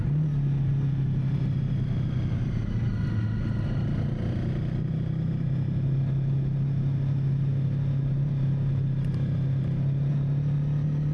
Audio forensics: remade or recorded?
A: recorded